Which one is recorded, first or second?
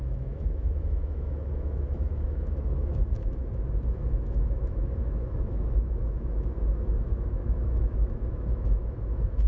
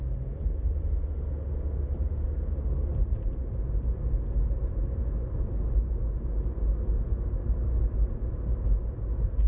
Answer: second